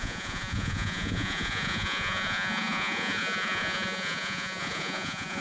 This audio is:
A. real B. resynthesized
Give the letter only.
B